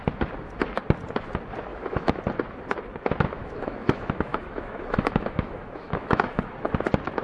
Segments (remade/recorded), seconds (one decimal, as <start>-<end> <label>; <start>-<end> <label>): 0.0-1.7 recorded; 1.7-2.2 remade; 2.2-3.4 recorded; 3.4-6.4 remade; 6.4-7.2 recorded